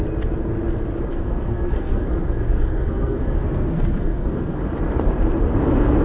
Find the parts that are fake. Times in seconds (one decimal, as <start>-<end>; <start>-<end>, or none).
1.1-4.6